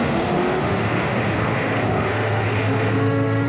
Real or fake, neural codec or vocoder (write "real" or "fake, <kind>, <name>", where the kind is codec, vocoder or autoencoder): fake, autoencoder, DAC-VAE